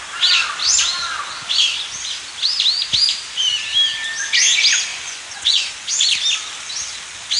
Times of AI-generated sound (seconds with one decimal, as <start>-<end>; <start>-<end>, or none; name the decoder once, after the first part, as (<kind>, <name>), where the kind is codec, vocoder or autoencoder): 4.9-5.9 (vocoder, Vocos)